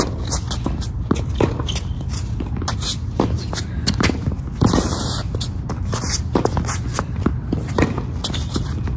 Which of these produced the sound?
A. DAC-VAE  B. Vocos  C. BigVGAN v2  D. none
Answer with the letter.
D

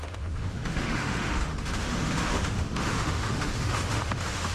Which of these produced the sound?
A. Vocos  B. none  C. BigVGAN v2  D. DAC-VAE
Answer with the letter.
D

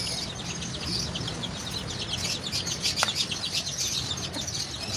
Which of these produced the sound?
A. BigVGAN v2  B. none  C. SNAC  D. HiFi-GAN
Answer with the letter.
B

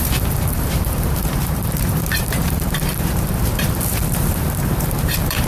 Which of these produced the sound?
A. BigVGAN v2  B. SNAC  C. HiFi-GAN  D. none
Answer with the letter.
A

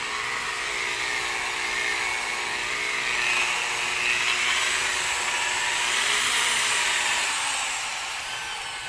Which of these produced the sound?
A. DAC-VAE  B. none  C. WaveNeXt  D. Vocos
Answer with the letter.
B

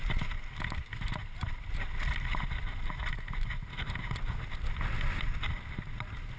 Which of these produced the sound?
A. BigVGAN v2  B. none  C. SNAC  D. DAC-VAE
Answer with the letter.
B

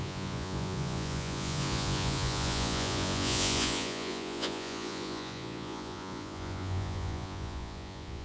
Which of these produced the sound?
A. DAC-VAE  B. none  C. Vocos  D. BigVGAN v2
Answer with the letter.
C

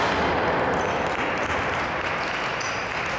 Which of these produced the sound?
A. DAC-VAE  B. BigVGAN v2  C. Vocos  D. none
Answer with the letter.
D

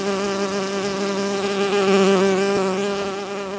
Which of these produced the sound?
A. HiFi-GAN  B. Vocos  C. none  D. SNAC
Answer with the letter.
C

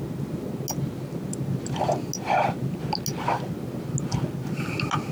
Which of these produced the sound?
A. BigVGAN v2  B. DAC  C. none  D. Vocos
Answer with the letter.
C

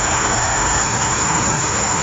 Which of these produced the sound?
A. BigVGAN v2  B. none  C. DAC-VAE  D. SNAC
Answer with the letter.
D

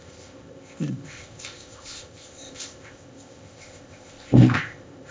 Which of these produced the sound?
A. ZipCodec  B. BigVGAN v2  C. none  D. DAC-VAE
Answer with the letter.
A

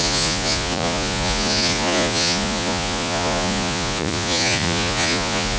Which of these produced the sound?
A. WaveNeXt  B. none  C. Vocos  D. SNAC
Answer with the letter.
C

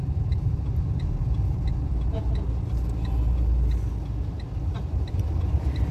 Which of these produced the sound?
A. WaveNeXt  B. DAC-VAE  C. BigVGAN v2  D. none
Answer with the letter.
D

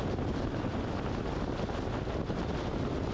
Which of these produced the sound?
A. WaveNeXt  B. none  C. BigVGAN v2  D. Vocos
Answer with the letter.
B